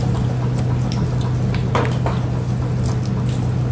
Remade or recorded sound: recorded